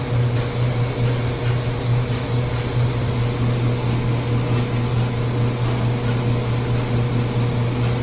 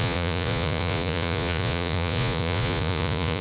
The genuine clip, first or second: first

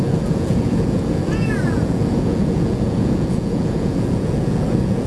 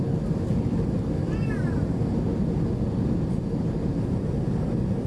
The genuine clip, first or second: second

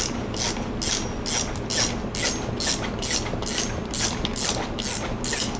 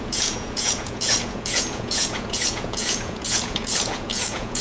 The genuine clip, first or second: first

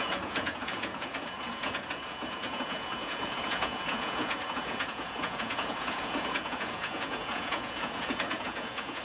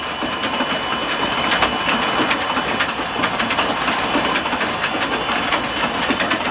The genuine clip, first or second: second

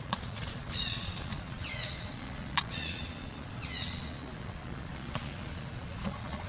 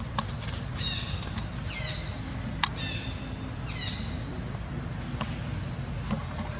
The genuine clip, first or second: second